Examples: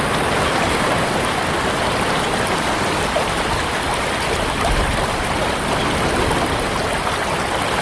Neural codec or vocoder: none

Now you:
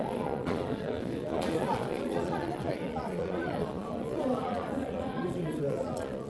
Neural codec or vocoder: vocoder, Vocos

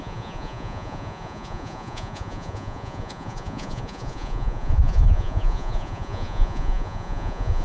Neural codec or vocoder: vocoder, Vocos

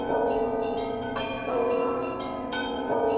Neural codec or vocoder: vocoder, Vocos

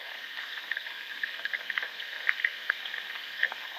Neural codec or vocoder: codec, SNAC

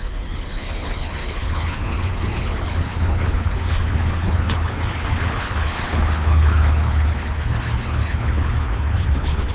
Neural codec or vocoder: codec, HILCodec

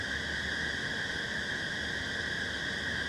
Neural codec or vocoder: none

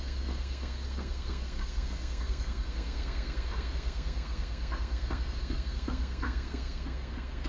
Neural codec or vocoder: codec, SNAC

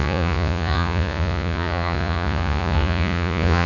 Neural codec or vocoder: vocoder, Vocos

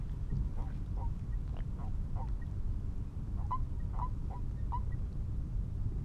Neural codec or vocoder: none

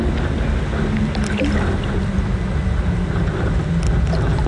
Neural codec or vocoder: none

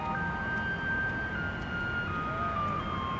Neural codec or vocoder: none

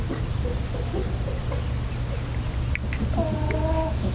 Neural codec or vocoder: none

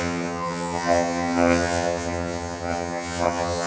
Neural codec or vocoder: vocoder, HiFi-GAN